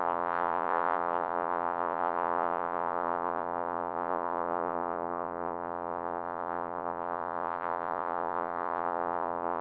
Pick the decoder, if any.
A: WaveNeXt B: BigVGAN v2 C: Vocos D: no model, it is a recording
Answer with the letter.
C